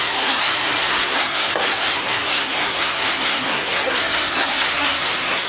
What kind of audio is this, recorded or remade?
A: remade